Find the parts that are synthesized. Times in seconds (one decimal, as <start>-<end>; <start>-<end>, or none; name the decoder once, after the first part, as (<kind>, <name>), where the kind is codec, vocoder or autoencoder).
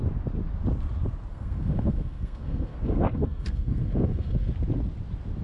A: 1.3-4.5 (codec, SNAC)